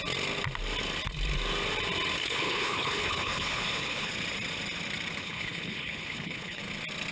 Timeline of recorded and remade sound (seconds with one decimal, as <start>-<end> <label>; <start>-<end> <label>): 0.0-2.2 recorded; 2.2-4.1 remade; 4.1-5.2 recorded; 5.2-6.6 remade; 6.6-7.1 recorded

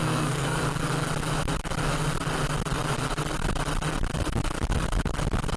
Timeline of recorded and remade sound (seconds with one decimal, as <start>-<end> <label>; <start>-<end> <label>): 0.0-0.6 remade; 0.6-5.6 recorded

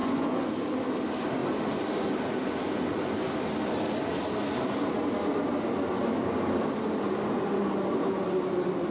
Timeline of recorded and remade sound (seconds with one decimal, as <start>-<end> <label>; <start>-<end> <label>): 0.0-0.5 remade; 0.5-8.9 recorded